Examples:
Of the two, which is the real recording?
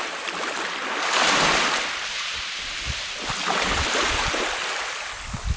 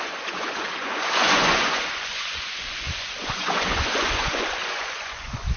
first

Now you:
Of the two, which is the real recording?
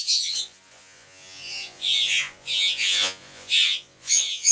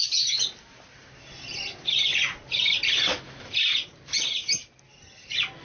second